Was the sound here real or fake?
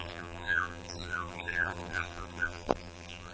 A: fake